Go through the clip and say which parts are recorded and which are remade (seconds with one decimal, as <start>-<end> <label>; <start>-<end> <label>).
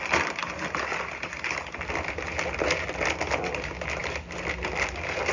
0.0-5.3 recorded